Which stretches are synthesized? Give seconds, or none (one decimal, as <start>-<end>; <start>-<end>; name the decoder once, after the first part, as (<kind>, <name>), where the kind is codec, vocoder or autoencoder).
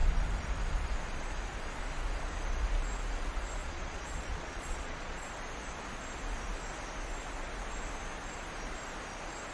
3.6-5.3 (vocoder, Vocos)